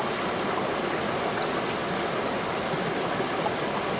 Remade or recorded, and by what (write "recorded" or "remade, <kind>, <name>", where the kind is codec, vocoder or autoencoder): recorded